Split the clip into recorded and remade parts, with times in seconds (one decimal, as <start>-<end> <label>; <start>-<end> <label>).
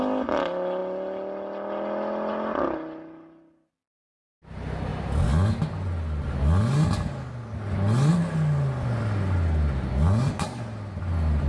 0.0-11.5 recorded